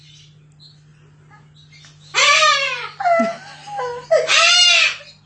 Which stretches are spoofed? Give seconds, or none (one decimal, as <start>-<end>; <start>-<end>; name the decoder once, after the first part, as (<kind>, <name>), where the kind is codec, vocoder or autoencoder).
none